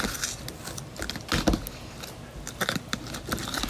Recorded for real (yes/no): yes